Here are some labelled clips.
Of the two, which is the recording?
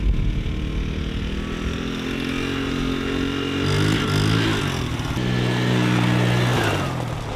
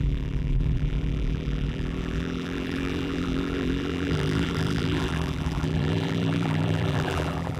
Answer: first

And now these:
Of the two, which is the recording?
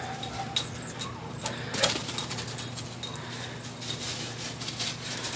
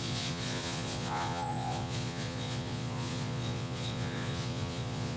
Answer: first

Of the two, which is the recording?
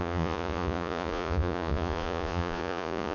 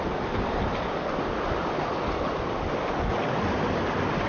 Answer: second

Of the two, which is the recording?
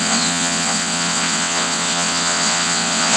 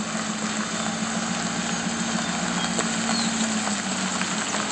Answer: second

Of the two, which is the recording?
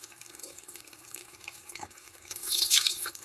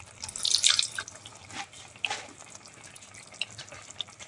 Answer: second